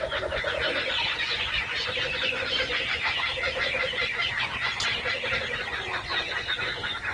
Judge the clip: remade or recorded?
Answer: remade